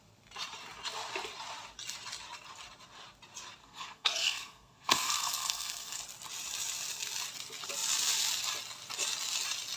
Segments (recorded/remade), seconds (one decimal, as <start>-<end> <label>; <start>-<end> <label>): 0.0-3.6 recorded; 3.6-6.0 remade; 6.0-9.8 recorded